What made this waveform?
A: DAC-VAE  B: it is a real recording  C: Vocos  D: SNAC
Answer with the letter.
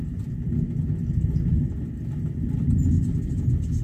B